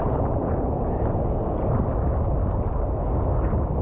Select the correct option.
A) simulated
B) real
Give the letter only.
B